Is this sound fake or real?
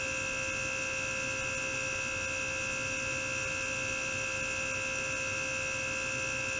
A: real